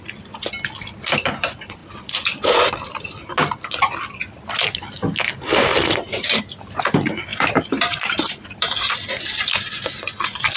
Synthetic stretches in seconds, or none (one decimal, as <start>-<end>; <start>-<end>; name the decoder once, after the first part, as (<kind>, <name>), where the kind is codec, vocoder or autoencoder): 5.7-6.4 (vocoder, BigVGAN v2); 7.3-8.9